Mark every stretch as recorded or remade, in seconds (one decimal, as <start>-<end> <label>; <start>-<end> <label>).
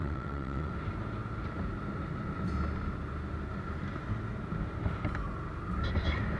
0.0-0.7 remade; 0.7-6.4 recorded